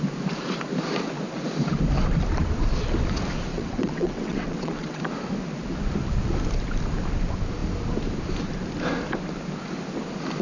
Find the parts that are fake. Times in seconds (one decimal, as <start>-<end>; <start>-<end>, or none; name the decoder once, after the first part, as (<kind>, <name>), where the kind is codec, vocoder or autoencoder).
3.5-5.0 (vocoder, WaveNeXt)